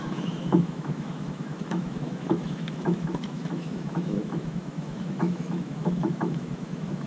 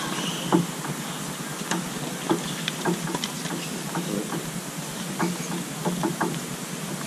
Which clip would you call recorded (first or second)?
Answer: second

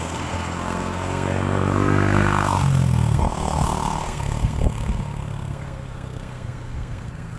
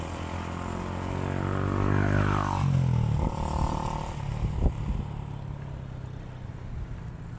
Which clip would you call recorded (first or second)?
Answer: second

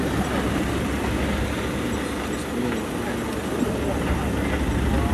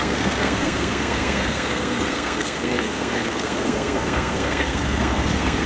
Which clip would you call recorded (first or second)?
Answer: first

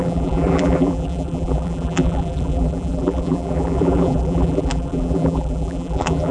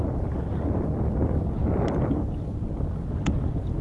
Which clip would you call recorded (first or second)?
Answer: second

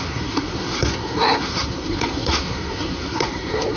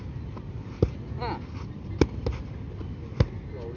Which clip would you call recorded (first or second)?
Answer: second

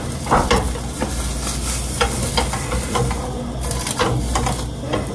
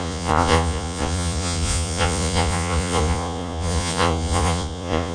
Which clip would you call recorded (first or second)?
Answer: first